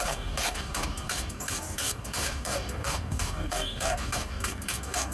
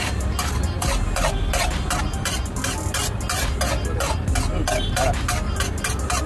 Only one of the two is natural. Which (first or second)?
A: second